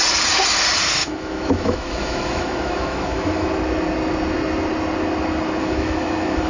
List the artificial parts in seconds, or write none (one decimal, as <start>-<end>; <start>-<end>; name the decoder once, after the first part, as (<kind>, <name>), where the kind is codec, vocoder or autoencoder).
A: 1.0-3.5 (autoencoder, DAC-VAE); 5.6-6.5